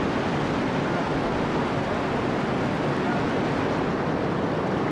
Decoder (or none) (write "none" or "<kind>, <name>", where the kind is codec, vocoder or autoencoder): none